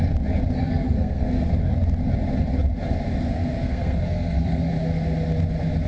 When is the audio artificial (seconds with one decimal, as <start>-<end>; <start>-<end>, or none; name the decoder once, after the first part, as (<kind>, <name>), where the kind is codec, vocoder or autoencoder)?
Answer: 0.6-1.5 (codec, SNAC); 3.2-4.7